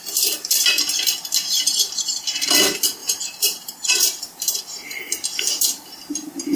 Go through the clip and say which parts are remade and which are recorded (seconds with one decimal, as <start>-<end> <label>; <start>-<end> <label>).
0.0-3.0 recorded; 3.0-4.6 remade; 4.6-6.6 recorded